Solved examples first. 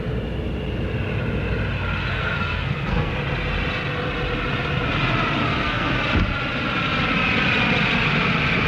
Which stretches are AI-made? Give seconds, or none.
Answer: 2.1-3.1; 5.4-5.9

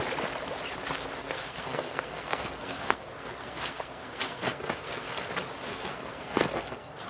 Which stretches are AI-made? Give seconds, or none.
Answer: 1.2-5.3; 5.7-7.1

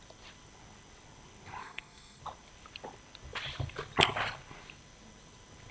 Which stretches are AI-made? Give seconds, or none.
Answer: 1.6-2.2

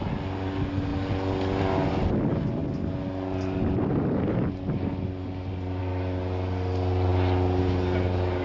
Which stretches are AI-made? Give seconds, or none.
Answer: none